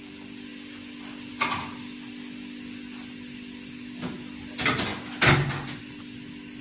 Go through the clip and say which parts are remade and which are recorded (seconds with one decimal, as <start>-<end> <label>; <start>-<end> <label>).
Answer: 0.0-6.6 recorded